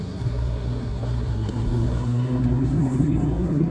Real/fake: fake